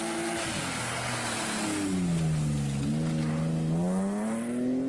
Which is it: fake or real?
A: real